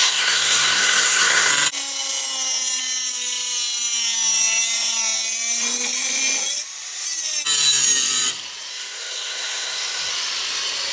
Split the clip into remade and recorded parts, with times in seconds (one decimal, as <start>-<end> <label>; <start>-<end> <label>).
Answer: 0.0-1.5 remade; 1.5-8.7 recorded; 8.7-10.1 remade; 10.1-10.9 recorded